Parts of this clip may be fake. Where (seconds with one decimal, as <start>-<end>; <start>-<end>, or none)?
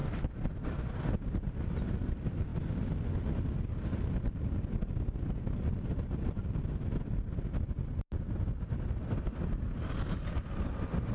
none